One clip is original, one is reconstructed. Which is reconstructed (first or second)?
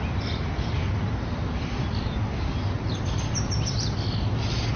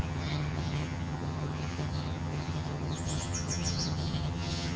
second